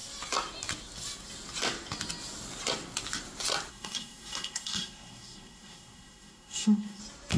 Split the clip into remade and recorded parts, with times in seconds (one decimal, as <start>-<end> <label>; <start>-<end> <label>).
0.0-3.7 recorded; 3.7-7.0 remade; 7.0-7.4 recorded